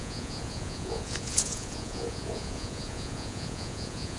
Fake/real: fake